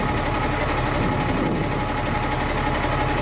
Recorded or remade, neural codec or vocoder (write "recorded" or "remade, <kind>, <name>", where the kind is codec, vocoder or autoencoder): recorded